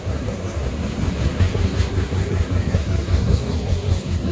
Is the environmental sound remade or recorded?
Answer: remade